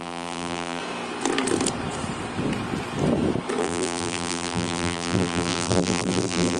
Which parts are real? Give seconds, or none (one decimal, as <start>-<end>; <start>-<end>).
0.8-3.6